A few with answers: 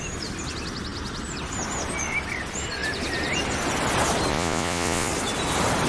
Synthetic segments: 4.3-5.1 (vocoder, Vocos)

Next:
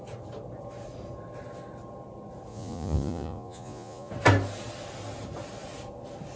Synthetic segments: 2.5-4.1 (vocoder, Vocos)

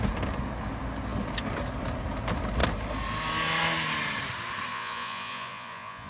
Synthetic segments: 4.7-6.1 (vocoder, Vocos)

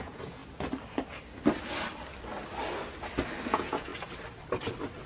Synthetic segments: 0.0-0.4 (vocoder, Vocos); 3.5-3.9

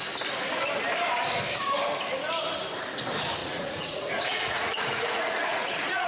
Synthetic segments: 3.4-6.1 (vocoder, Vocos)

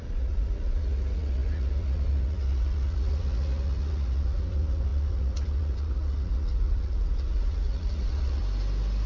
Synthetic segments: 0.0-8.4 (vocoder, Vocos)